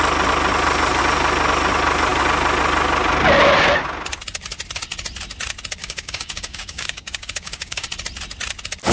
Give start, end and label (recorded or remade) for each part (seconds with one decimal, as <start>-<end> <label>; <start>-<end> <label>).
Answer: 0.0-5.8 recorded; 5.8-7.9 remade; 7.9-8.9 recorded